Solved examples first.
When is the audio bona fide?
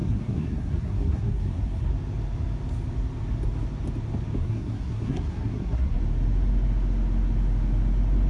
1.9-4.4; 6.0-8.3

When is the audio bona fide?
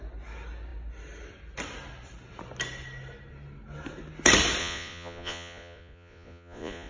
0.0-4.6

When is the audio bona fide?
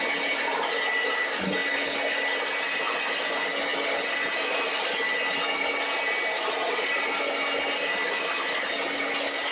0.0-9.5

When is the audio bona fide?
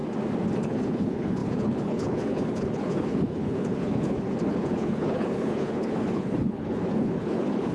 0.0-0.6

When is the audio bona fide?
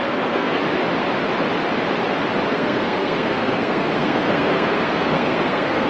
0.6-2.5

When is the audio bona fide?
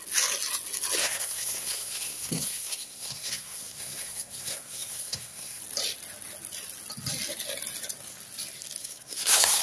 0.0-1.0; 5.6-8.8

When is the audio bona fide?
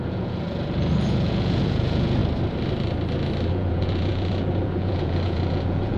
2.2-3.5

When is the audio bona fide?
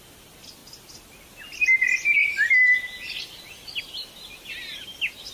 0.0-5.3